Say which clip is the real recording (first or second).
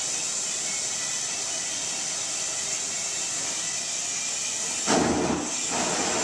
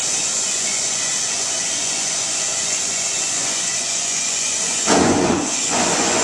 first